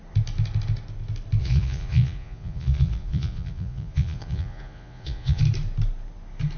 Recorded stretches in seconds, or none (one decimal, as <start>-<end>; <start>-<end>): 0.0-1.4; 5.4-6.6